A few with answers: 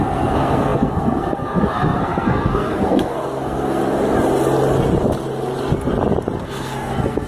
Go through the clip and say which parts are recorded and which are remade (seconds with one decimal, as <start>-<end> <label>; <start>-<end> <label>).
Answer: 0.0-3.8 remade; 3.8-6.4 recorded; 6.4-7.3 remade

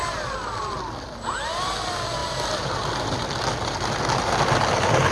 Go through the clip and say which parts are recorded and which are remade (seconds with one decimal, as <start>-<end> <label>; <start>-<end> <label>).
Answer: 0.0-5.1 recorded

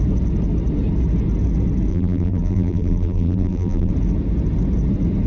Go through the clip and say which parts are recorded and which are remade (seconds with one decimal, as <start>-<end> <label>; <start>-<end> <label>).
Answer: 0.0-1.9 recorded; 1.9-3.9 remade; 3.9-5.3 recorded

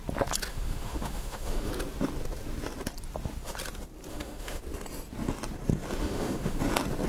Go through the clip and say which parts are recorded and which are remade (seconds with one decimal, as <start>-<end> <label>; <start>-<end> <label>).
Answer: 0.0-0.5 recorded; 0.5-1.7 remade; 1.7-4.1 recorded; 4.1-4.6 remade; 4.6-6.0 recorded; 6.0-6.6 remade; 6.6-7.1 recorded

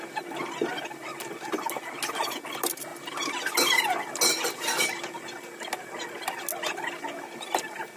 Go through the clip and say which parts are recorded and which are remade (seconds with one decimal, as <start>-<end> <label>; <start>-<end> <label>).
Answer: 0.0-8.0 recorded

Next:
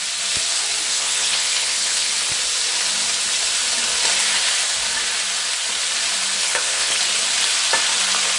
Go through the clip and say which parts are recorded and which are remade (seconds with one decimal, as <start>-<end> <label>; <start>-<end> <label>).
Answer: 0.0-0.9 recorded; 0.9-2.1 remade; 2.1-6.4 recorded; 6.4-7.0 remade; 7.0-8.4 recorded

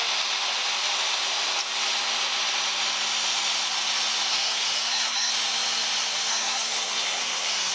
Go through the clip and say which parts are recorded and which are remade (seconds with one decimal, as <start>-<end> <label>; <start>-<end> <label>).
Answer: 0.0-4.3 recorded; 4.3-5.3 remade; 5.3-6.3 recorded; 6.3-7.7 remade